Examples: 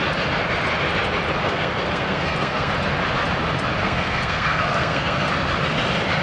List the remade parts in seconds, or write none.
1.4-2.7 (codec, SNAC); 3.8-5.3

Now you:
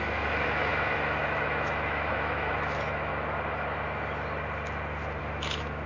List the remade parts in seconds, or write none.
0.0-3.1 (autoencoder, DAC-VAE); 5.2-5.9

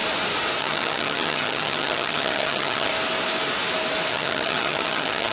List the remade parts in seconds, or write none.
0.6-2.9 (vocoder, HiFi-GAN); 4.1-5.3